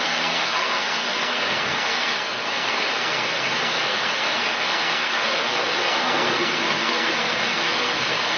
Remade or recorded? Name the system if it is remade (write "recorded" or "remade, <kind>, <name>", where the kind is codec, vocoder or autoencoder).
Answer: remade, codec, SNAC